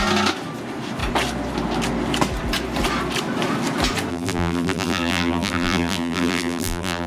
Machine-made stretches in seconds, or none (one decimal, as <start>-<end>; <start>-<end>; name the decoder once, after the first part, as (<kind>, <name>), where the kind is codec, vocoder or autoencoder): 4.1-7.1 (vocoder, BigVGAN v2)